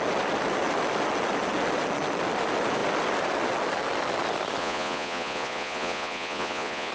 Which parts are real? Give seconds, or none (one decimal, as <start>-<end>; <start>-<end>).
0.0-4.6